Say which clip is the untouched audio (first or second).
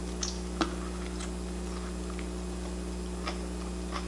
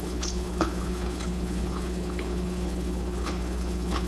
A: first